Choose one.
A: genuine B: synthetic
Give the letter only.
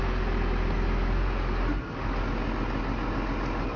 A